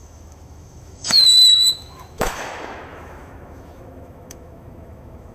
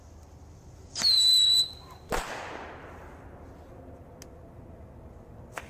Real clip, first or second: second